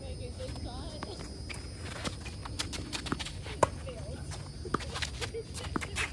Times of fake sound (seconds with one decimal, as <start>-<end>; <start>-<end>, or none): none